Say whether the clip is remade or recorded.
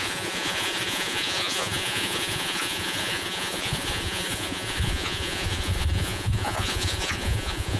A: remade